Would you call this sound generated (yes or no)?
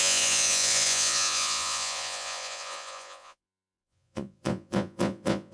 yes